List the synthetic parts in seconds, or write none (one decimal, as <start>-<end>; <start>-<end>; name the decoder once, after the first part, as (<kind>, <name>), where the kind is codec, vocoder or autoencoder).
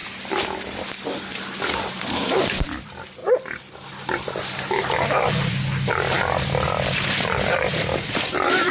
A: 1.9-8.7 (vocoder, BigVGAN v2)